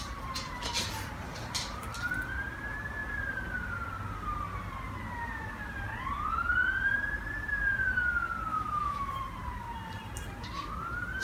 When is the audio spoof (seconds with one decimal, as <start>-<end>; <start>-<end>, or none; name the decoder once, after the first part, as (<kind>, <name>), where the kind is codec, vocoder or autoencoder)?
8.5-9.1 (autoencoder, DAC-VAE)